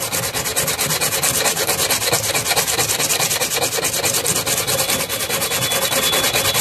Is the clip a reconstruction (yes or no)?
no